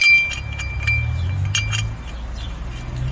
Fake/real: real